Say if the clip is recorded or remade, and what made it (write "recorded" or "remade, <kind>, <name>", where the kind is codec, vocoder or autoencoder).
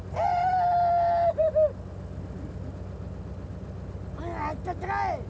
recorded